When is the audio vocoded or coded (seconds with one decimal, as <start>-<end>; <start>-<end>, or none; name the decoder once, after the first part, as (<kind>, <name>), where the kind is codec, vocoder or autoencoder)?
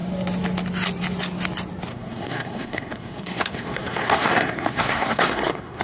1.9-5.8 (codec, SNAC)